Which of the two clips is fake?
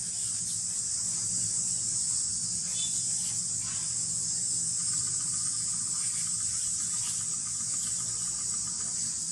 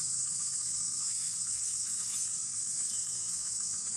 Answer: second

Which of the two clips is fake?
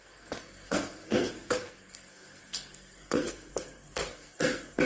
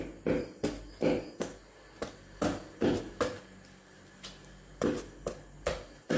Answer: first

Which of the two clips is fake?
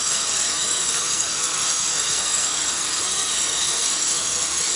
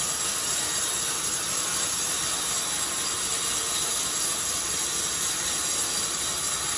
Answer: first